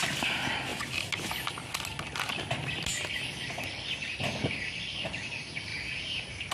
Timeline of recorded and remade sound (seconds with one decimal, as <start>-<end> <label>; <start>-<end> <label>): 0.0-5.7 recorded; 5.7-6.5 remade